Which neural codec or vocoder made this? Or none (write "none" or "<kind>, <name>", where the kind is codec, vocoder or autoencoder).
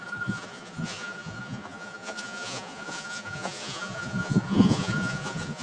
vocoder, Vocos